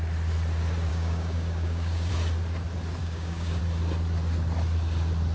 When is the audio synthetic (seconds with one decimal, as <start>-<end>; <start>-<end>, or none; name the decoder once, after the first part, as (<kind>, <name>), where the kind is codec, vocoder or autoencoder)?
0.9-2.1 (codec, DAC); 3.0-3.6